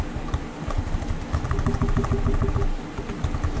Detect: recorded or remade recorded